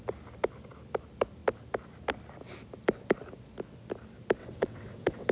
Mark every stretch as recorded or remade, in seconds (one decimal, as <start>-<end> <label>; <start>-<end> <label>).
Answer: 0.0-4.4 recorded; 4.4-5.3 remade